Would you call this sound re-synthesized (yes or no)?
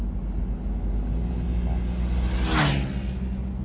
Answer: no